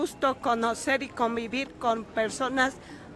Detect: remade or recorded recorded